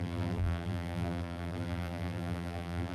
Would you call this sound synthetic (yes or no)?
yes